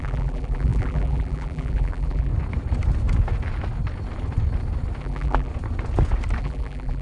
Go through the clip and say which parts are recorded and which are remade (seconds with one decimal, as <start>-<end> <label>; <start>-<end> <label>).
0.0-2.3 remade; 2.3-5.0 recorded; 5.0-5.5 remade; 5.5-6.4 recorded; 6.4-7.0 remade